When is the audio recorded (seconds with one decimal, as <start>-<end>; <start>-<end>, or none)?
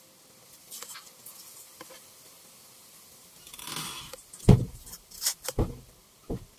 0.0-6.6